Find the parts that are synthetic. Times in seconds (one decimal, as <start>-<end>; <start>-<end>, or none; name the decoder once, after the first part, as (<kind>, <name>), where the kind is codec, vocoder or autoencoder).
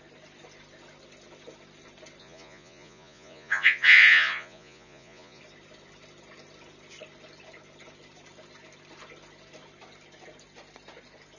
2.2-5.4 (vocoder, Vocos)